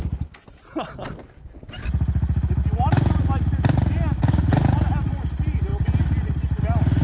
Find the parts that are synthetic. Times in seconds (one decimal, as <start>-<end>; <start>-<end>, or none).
none